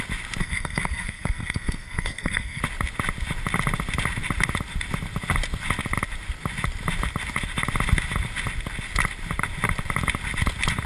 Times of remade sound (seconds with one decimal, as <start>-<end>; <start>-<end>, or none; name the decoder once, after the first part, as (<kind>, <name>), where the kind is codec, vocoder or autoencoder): 0.4-2.6 (codec, SNAC)